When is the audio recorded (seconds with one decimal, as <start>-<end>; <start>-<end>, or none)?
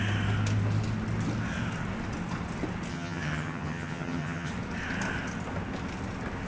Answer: 0.0-2.9; 4.5-6.5